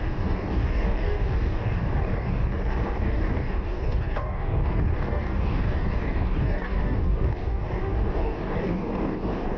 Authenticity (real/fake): fake